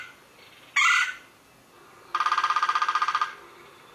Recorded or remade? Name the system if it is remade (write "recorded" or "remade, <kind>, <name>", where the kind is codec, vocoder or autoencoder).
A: recorded